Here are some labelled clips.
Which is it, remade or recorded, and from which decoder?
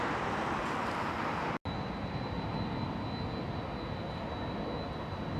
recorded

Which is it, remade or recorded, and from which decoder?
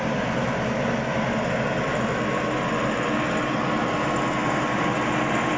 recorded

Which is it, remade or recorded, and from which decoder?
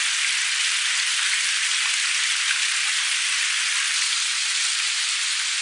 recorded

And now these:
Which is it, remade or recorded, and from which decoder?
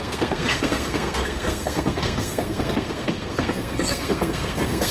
remade, codec, SNAC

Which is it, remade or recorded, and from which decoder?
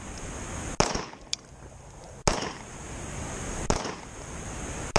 recorded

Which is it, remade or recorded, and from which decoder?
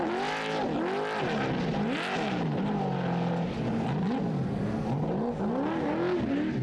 recorded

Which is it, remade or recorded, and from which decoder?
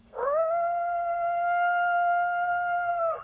remade, codec, SNAC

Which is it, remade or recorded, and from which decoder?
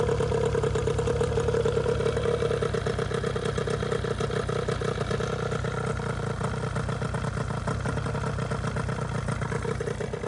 recorded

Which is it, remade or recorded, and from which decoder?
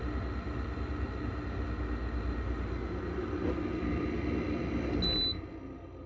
recorded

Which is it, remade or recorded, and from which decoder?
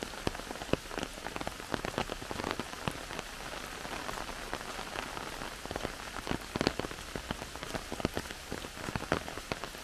recorded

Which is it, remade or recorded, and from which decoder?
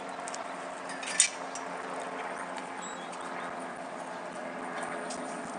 recorded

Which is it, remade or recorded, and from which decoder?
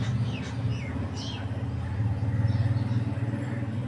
recorded